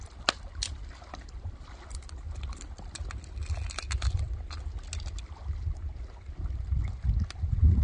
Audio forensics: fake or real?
real